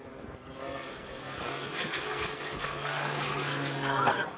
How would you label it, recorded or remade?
remade